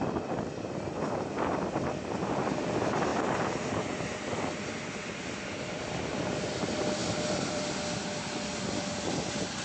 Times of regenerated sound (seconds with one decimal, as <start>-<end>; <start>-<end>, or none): 7.0-7.8